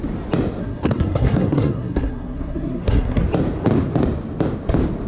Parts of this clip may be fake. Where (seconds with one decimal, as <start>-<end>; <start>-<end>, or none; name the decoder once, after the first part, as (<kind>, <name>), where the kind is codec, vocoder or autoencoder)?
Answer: 0.6-3.2 (codec, SNAC)